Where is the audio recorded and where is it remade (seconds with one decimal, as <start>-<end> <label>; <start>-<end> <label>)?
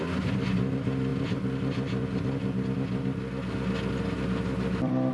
0.0-5.1 recorded